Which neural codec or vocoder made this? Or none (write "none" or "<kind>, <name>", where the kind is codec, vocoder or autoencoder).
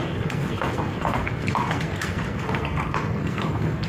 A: codec, SNAC